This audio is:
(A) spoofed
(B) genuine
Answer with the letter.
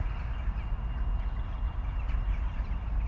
B